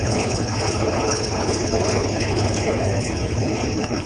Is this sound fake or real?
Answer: fake